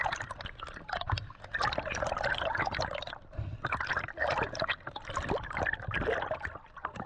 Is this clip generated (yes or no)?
no